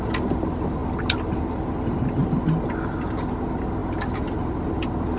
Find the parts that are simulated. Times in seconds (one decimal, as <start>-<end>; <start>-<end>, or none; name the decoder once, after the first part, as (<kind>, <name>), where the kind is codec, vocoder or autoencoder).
none